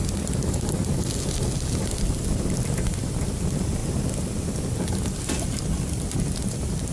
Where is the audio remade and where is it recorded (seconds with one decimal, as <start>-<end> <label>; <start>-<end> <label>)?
0.0-6.9 recorded